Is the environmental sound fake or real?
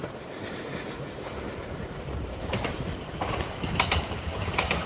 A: fake